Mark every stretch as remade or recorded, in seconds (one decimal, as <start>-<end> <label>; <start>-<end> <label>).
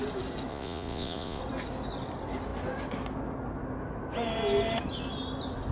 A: 0.0-0.5 recorded; 0.5-1.4 remade; 1.4-5.7 recorded